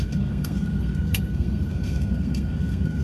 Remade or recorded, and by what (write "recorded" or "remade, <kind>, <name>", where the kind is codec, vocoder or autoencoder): remade, codec, SNAC